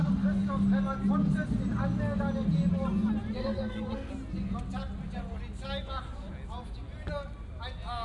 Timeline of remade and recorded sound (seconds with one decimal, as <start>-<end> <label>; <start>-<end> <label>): 0.0-3.4 recorded; 3.4-4.1 remade; 4.1-8.0 recorded